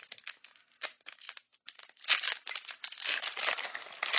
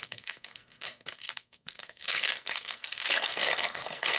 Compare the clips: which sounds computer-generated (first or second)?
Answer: second